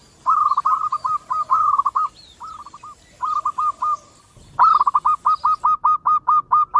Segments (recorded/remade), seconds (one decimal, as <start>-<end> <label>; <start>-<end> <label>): 0.0-6.8 recorded